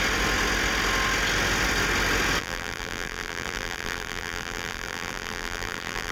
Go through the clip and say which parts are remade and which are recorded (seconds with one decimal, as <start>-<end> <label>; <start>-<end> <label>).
0.0-2.4 recorded; 2.4-6.1 remade